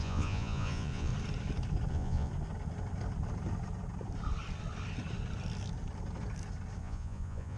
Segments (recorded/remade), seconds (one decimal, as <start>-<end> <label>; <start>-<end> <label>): 0.0-1.1 remade; 1.1-1.9 recorded; 1.9-2.3 remade; 2.3-6.8 recorded; 6.8-7.6 remade